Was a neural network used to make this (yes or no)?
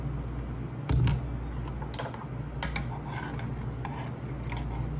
no